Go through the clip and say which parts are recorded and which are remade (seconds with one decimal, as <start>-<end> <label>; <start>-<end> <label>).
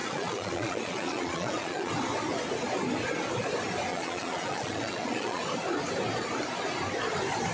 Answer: 0.0-1.9 remade; 1.9-3.9 recorded; 3.9-5.4 remade; 5.4-7.5 recorded